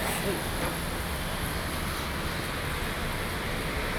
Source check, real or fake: real